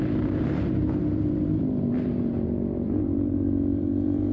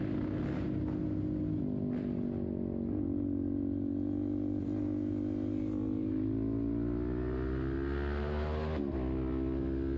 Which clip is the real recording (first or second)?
second